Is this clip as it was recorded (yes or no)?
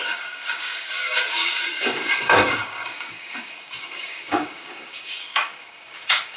no